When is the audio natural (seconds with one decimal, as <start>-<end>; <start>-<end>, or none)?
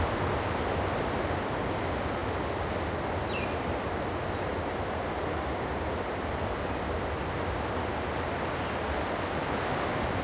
0.0-10.2